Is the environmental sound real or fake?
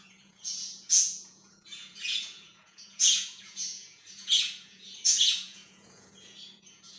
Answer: fake